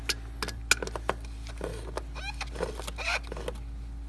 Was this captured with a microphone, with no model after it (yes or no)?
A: yes